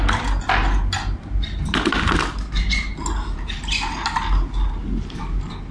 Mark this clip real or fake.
real